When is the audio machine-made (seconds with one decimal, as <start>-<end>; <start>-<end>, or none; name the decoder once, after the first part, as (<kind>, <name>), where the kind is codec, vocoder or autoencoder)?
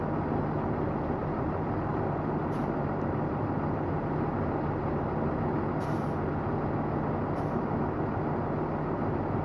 1.2-3.6 (vocoder, BigVGAN v2)